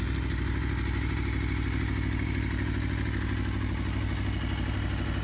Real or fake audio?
real